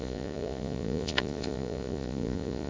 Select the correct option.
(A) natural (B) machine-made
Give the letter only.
B